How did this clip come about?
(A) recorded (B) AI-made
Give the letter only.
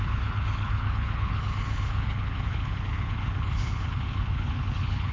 B